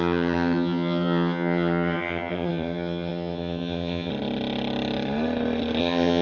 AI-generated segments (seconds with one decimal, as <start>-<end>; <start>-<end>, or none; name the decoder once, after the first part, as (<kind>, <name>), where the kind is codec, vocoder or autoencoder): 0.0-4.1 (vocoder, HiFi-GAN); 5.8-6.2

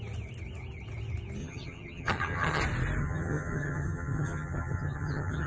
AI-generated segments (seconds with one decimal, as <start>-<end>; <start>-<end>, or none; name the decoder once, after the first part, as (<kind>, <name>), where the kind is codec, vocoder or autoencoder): 1.4-2.6 (vocoder, HiFi-GAN); 3.0-5.5

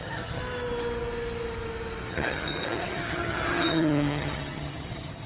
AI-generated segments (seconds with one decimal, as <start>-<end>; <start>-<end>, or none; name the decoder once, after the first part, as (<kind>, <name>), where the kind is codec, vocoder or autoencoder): 0.0-0.4 (vocoder, HiFi-GAN); 2.1-5.3

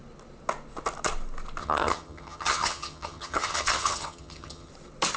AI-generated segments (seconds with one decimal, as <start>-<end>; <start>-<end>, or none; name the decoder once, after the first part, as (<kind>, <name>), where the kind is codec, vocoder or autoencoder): 1.6-4.7 (vocoder, HiFi-GAN)

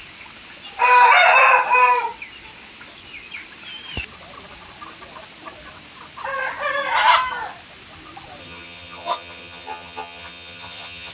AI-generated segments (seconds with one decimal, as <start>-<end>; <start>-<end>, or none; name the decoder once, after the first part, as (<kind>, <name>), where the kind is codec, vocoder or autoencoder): 8.4-11.1 (vocoder, HiFi-GAN)

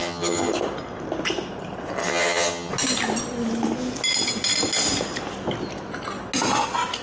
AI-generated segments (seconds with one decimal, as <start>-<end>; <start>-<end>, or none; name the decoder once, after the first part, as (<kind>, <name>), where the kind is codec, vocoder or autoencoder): 0.0-0.5 (vocoder, HiFi-GAN); 2.0-2.7

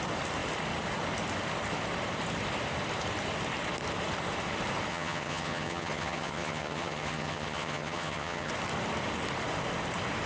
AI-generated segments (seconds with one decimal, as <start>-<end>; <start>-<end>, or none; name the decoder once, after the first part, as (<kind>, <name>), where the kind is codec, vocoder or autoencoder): 4.9-8.5 (vocoder, HiFi-GAN)